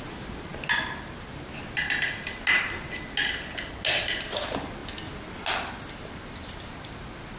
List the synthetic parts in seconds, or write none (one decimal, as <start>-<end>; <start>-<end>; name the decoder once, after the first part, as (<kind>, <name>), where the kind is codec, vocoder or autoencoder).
none